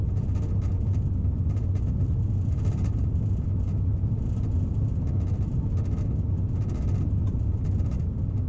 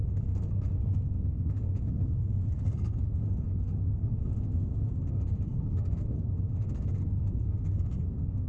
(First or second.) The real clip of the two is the first